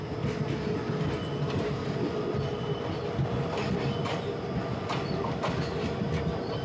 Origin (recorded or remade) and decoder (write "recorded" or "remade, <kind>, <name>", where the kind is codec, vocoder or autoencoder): recorded